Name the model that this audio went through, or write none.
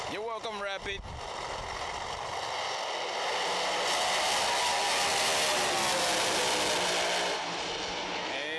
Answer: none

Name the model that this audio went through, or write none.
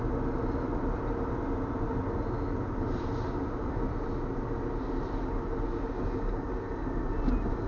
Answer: none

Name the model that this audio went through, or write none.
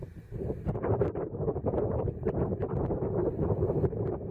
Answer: vocoder, BigVGAN v2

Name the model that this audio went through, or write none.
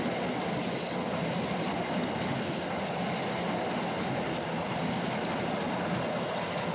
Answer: none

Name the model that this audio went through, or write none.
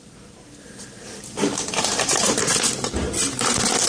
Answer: none